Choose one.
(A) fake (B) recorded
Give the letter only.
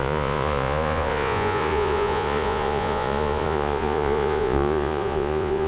A